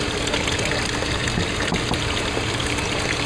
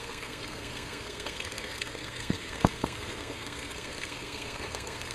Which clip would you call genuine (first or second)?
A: first